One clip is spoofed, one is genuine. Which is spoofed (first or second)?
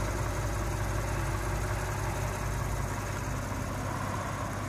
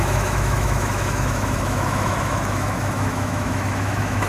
second